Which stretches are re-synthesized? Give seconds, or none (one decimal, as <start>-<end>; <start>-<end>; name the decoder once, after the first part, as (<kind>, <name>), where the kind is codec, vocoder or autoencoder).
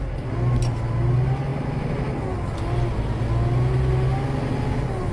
none